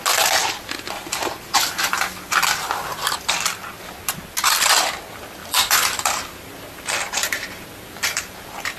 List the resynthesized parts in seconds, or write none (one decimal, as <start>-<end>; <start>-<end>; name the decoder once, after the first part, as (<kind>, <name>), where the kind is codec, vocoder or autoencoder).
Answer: 5.4-8.8 (vocoder, BigVGAN v2)